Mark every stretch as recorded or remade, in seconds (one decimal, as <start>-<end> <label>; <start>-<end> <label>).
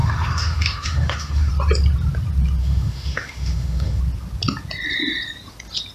0.0-1.5 remade; 1.5-2.6 recorded; 2.6-4.0 remade; 4.0-5.9 recorded